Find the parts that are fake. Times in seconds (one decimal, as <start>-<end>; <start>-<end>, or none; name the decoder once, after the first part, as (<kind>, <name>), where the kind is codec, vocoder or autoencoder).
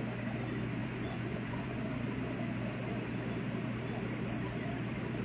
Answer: 0.8-1.9 (vocoder, Vocos)